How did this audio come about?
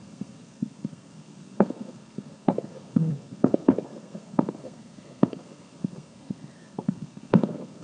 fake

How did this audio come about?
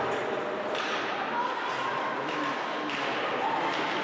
real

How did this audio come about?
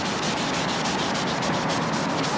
real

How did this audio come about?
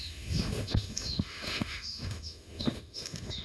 fake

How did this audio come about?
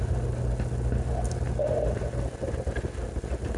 real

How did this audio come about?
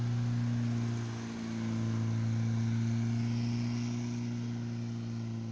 real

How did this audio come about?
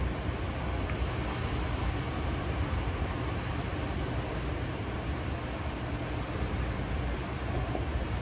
real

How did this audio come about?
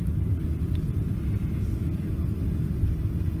real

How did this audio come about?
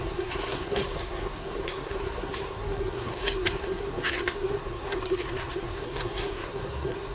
fake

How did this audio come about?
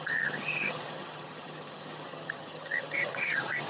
fake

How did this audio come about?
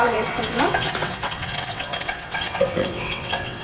fake